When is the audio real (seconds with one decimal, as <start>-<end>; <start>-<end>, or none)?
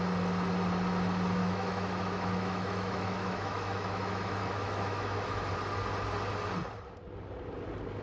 0.0-1.4; 5.5-8.0